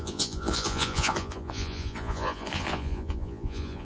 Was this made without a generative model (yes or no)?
no